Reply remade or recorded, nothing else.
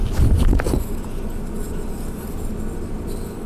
recorded